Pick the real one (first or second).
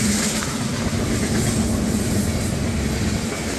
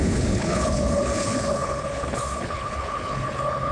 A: first